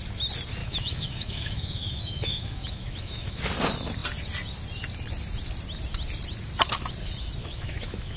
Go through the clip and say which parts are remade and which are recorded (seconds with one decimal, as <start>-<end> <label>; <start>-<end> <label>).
0.0-0.6 recorded; 0.6-3.4 remade; 3.4-7.4 recorded; 7.4-8.2 remade